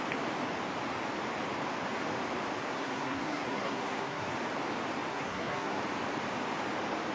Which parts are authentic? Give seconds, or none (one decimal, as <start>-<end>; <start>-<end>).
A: 0.0-2.6; 4.3-5.1; 5.8-7.1